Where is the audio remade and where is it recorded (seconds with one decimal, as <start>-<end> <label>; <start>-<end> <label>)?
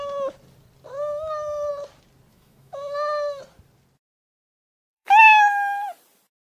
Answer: 0.0-1.0 recorded; 1.0-1.7 remade; 1.7-2.3 recorded; 2.3-3.4 remade; 3.4-4.2 recorded; 4.2-5.2 remade; 5.2-6.4 recorded